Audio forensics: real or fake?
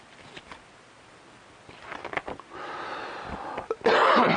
real